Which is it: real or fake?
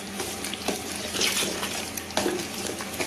real